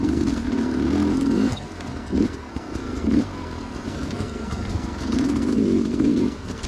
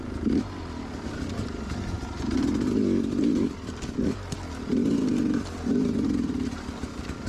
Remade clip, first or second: first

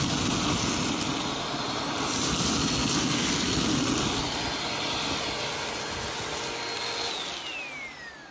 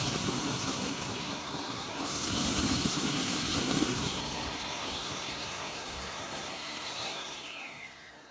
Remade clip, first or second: second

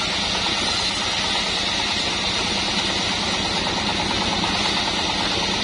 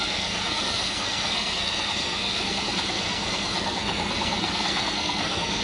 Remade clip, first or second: second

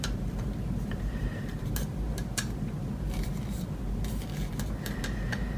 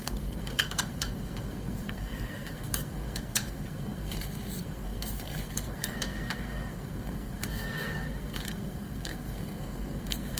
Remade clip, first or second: second